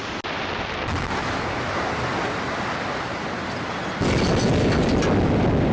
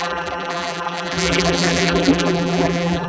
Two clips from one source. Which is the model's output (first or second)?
second